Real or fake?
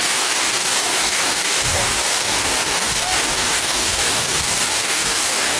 fake